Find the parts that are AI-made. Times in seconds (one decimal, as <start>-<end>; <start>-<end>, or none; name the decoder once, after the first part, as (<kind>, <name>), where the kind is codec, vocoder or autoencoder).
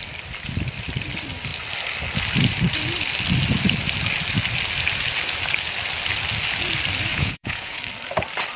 7.1-7.8 (vocoder, Vocos)